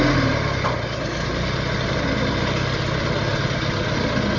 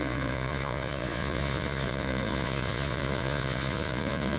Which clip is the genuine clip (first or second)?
first